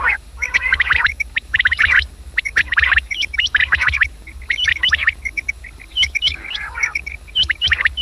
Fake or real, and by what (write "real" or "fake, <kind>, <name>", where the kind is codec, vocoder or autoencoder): fake, codec, DAC